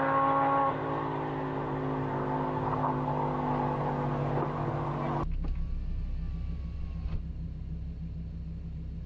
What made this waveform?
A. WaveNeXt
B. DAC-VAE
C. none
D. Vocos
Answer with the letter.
C